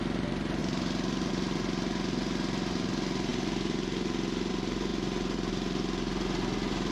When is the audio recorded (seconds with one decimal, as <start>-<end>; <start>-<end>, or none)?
0.0-6.9